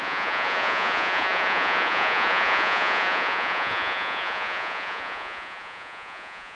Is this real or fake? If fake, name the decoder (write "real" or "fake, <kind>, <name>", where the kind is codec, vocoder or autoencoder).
fake, vocoder, Vocos